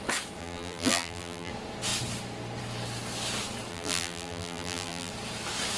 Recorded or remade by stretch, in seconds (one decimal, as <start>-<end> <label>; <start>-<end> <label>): 0.0-0.4 recorded; 0.4-1.5 remade; 1.5-3.7 recorded; 3.7-5.1 remade; 5.1-5.8 recorded